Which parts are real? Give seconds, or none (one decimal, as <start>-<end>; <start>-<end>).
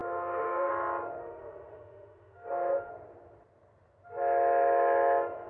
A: 0.7-1.2; 2.9-5.5